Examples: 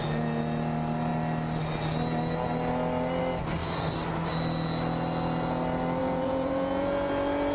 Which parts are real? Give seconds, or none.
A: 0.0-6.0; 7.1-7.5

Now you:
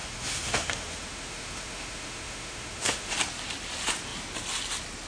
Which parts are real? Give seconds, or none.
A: 3.1-5.1

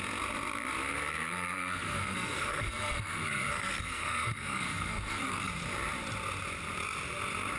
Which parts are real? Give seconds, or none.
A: 0.0-0.9; 5.5-7.6

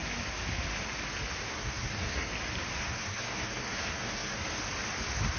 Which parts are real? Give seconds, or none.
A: 0.0-1.5; 2.3-2.8; 4.6-5.4

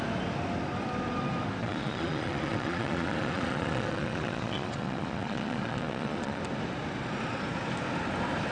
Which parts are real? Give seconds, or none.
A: 0.0-1.6; 6.4-8.5

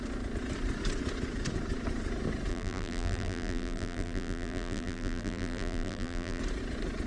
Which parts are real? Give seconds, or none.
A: 0.0-2.5; 6.4-7.1

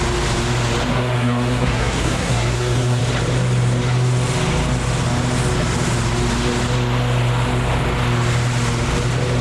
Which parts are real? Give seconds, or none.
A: 0.0-0.9; 3.0-9.4

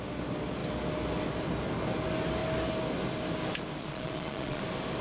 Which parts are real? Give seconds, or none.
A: 0.0-3.8; 4.6-5.0